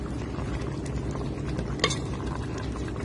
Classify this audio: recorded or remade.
recorded